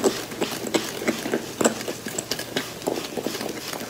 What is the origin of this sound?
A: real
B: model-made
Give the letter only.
A